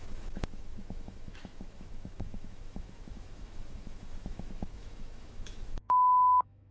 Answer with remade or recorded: remade